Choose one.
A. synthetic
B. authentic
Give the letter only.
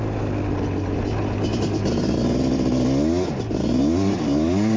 B